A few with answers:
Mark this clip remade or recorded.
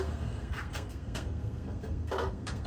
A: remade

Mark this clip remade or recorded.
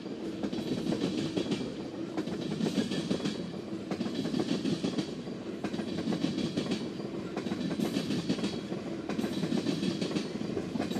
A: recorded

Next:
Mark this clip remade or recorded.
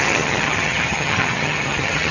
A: remade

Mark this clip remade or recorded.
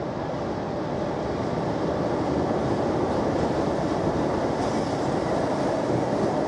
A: recorded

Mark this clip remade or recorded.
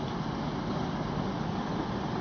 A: recorded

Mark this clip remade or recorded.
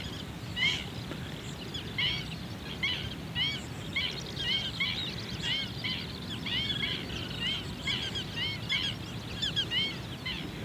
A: recorded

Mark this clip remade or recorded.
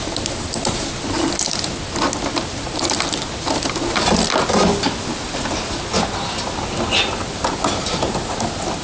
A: recorded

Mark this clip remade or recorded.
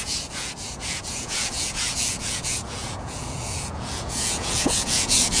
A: remade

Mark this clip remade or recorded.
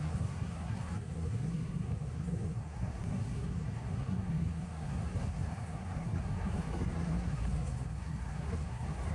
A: remade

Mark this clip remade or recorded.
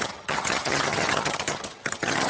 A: remade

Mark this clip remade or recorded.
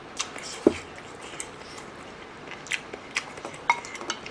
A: recorded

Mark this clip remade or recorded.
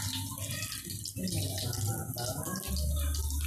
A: recorded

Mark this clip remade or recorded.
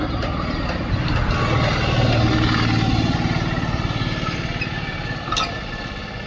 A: recorded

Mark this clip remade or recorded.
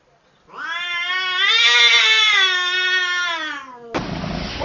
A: recorded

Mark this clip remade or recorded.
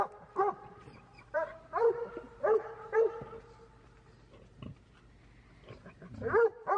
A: remade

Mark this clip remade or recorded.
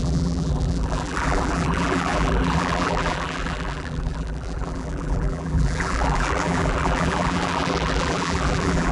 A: remade